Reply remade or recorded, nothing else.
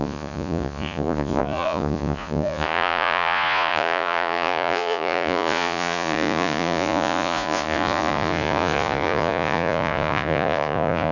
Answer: remade